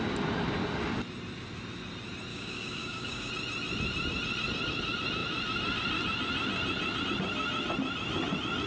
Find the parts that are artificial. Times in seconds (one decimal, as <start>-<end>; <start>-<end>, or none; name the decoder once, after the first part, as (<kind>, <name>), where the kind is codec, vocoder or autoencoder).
2.3-3.3 (codec, DAC)